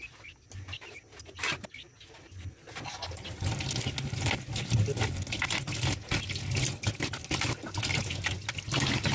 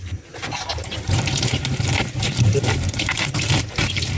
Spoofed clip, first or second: second